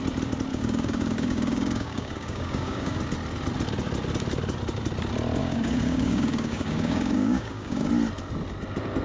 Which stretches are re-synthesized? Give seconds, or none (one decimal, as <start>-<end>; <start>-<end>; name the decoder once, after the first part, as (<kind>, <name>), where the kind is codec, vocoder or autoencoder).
0.5-3.0 (codec, DAC); 5.4-7.9